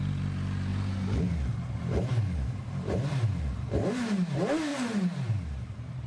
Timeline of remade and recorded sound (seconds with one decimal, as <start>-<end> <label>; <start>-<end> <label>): 0.0-0.7 recorded; 0.7-4.3 remade; 4.3-4.7 recorded; 4.7-6.1 remade